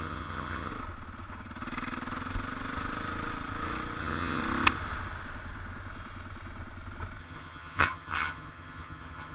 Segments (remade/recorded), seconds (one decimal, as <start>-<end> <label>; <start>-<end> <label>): 0.0-0.7 remade; 0.7-4.0 recorded; 4.0-4.4 remade; 4.4-7.2 recorded; 7.2-9.3 remade